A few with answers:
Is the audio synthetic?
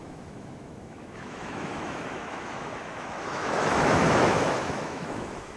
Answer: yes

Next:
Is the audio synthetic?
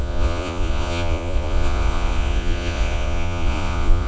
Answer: yes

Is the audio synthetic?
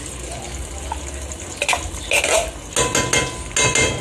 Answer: no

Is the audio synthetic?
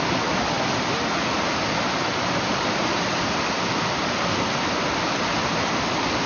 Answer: no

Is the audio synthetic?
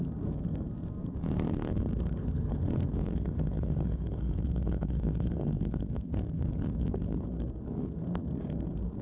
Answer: yes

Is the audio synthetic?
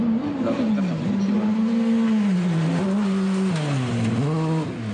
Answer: no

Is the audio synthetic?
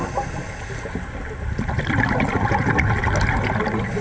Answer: no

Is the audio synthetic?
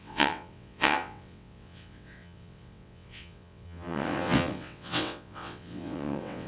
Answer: yes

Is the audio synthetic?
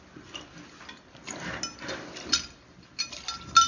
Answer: no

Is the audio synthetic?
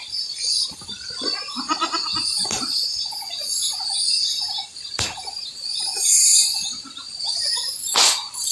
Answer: yes